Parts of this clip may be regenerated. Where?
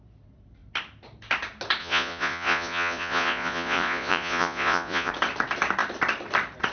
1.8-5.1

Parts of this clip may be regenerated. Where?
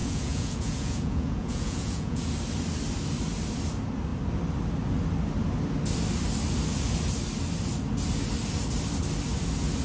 0.0-2.3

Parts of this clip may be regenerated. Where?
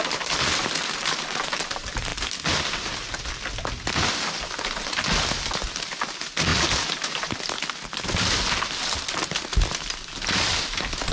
none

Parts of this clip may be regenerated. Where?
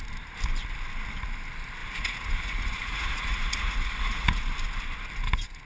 1.8-4.4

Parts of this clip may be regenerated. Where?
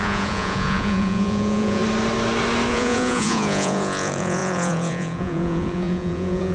0.0-1.8; 2.7-6.5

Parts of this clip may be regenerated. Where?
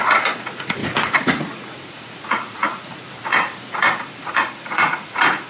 0.0-5.5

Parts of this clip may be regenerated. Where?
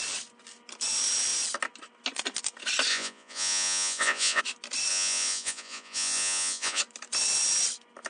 2.9-4.4; 4.9-6.8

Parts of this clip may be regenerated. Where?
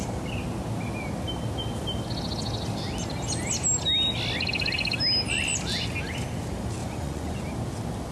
6.8-7.4